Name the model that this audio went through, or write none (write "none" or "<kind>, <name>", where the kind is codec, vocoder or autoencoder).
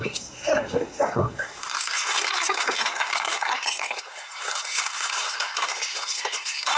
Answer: codec, SNAC